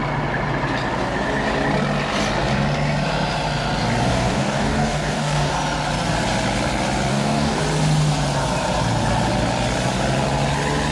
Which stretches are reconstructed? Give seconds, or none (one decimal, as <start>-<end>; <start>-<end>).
4.1-5.5; 7.1-7.6